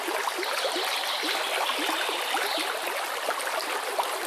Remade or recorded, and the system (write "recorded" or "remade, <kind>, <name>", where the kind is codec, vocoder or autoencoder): recorded